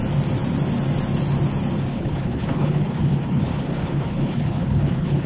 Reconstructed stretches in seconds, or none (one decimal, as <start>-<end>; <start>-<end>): 1.9-5.3